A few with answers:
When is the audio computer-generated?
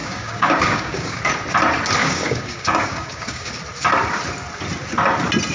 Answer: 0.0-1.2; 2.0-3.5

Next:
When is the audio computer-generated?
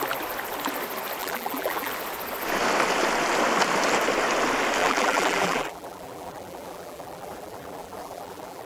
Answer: 1.2-1.9; 4.8-8.7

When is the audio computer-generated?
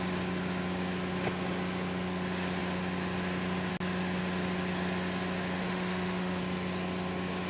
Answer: 5.6-6.4